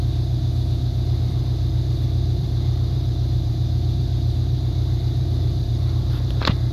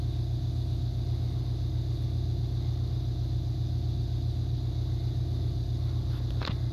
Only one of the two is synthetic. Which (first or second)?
first